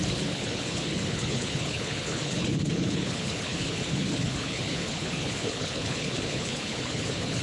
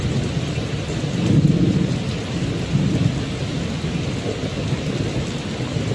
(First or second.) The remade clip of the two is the first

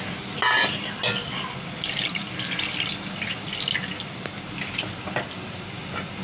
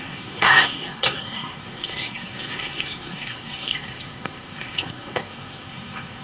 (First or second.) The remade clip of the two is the second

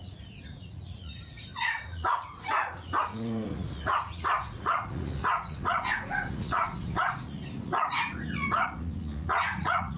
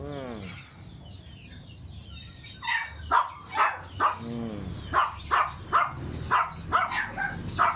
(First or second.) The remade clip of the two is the first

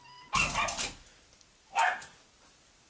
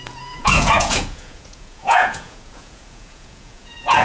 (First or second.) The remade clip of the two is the second